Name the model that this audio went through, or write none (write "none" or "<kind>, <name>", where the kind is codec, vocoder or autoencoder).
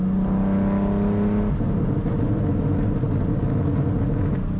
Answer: none